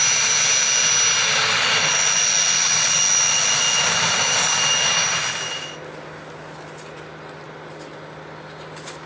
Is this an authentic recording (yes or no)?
yes